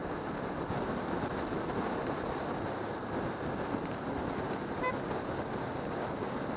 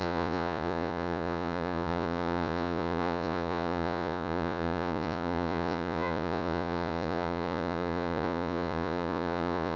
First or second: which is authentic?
first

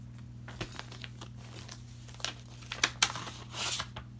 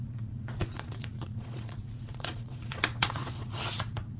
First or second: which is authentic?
first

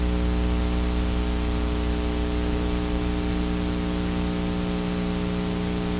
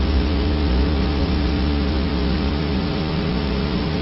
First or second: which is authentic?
first